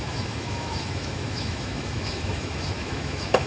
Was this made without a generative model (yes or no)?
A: no